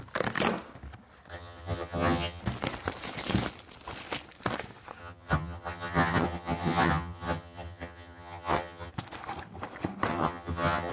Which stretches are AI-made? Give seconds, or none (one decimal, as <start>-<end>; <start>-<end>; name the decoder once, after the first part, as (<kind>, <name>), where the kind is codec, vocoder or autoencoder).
1.3-2.4 (vocoder, HiFi-GAN); 5.0-8.9; 10.1-10.9